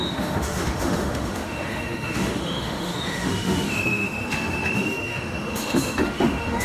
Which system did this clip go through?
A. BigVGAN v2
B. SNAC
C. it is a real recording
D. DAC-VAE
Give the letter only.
D